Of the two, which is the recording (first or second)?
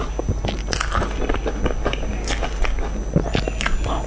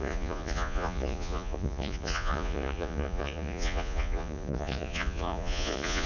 first